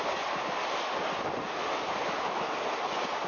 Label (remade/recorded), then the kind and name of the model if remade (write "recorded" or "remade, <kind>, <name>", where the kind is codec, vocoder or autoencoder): recorded